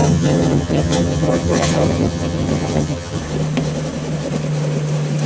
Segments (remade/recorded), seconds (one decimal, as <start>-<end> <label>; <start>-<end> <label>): 0.0-3.2 remade; 3.2-5.3 recorded